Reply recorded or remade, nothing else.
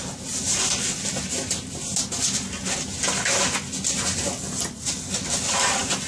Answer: recorded